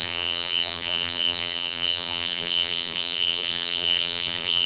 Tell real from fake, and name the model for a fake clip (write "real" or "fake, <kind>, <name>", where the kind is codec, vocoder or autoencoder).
fake, vocoder, BigVGAN v2